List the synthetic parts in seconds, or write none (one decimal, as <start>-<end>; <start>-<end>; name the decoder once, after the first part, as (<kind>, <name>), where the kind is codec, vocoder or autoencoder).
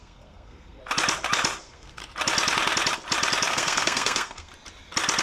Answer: 0.0-0.8 (codec, SNAC); 1.6-2.0; 3.5-4.5